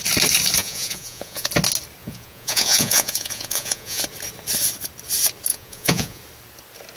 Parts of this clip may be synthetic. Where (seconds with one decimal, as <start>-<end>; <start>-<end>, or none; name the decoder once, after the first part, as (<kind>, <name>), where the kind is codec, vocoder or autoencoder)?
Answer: 0.6-1.5 (vocoder, Vocos); 2.0-4.0; 5.5-6.2